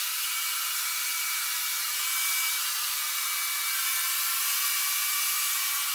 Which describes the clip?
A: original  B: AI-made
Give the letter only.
A